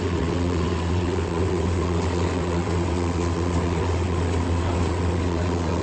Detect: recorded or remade remade